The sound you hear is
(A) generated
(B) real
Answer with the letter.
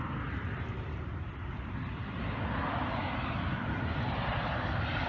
B